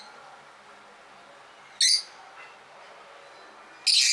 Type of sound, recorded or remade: recorded